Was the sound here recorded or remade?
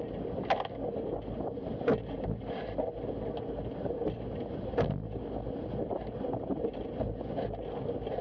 recorded